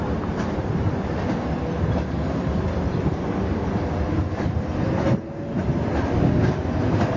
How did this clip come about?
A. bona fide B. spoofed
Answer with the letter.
A